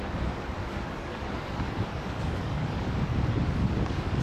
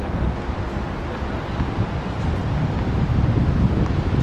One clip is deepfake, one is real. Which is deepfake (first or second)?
first